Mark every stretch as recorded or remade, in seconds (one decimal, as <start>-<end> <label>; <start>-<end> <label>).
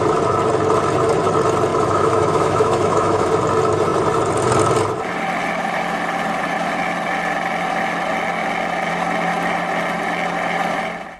0.0-1.7 recorded; 1.7-3.3 remade; 3.3-11.2 recorded